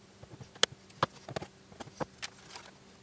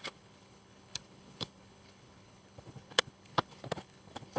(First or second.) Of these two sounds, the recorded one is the first